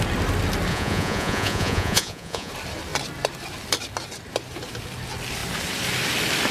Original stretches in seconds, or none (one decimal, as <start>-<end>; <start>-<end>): 0.0-0.7; 2.5-6.5